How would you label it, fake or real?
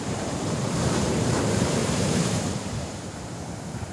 fake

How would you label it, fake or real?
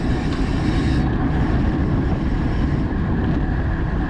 real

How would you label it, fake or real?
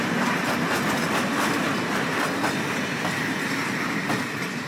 real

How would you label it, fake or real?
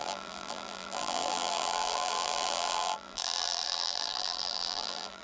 fake